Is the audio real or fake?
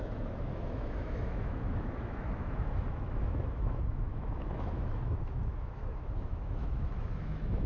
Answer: fake